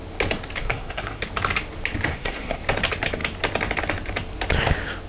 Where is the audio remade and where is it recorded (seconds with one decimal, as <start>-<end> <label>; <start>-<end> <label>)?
0.0-0.6 recorded; 0.6-1.2 remade; 1.2-2.1 recorded; 2.1-2.6 remade; 2.6-5.1 recorded